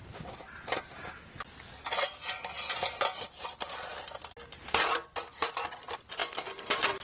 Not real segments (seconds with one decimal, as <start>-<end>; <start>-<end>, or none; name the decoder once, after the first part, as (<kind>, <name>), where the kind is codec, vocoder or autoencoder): 6.2-7.0 (vocoder, BigVGAN v2)